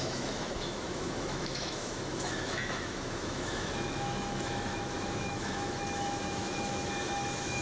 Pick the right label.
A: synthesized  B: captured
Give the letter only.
A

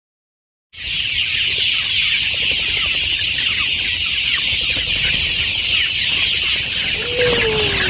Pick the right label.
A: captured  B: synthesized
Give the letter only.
A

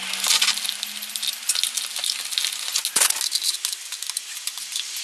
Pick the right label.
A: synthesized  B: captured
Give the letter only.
B